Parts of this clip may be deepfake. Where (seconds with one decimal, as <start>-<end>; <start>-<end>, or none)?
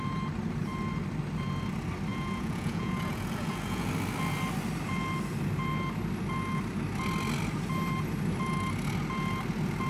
2.1-3.9